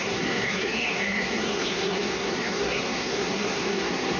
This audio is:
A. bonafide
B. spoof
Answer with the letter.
B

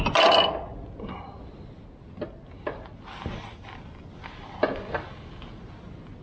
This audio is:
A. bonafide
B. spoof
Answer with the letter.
A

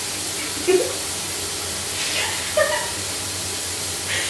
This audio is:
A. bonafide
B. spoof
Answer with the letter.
A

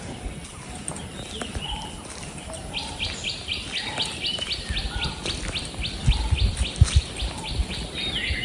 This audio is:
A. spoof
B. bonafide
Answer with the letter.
B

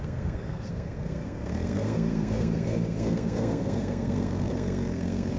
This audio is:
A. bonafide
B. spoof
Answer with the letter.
B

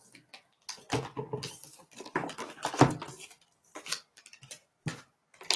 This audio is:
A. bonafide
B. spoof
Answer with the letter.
A